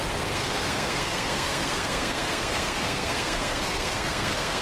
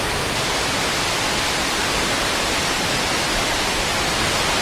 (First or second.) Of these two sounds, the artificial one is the first